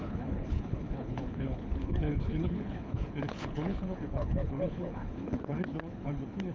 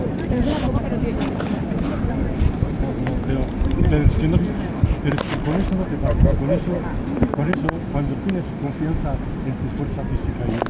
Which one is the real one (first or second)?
second